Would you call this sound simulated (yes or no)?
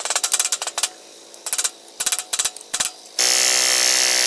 no